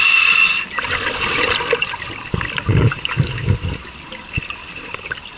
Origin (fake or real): fake